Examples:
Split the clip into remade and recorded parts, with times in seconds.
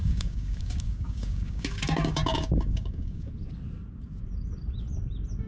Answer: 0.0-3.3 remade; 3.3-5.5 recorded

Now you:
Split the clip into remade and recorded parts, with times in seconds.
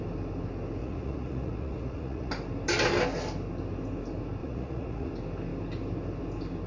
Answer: 0.0-0.8 recorded; 0.8-2.3 remade; 2.3-4.4 recorded; 4.4-5.1 remade; 5.1-6.7 recorded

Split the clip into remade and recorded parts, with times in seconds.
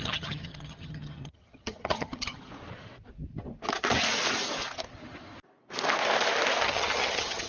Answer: 0.0-2.5 remade; 2.5-6.6 recorded; 6.6-7.5 remade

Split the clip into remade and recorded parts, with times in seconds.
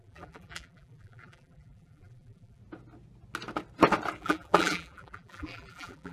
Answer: 0.0-2.6 remade; 2.6-4.2 recorded; 4.2-6.1 remade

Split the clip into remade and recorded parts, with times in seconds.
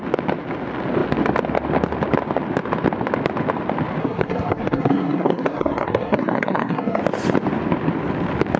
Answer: 0.0-4.0 recorded; 4.0-7.0 remade; 7.0-8.6 recorded